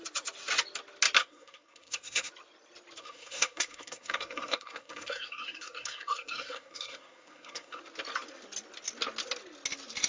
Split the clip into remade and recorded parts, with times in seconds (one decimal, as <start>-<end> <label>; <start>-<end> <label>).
0.0-1.2 recorded; 1.2-2.3 remade; 2.3-3.0 recorded; 3.0-7.8 remade; 7.8-10.1 recorded